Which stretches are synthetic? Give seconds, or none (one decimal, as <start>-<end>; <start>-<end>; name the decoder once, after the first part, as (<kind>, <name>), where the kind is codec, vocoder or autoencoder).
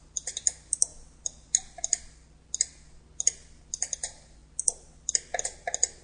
none